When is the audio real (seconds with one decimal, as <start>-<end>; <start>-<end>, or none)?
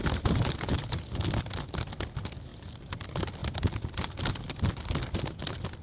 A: 1.0-5.8